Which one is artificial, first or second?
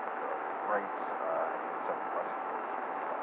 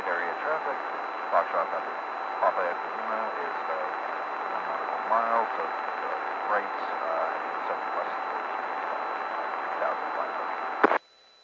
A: first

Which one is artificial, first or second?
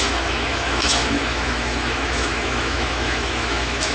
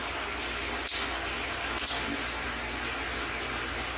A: first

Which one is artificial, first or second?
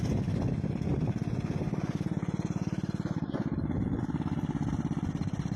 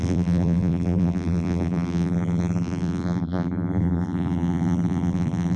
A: second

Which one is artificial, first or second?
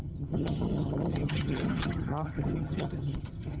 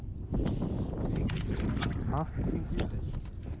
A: first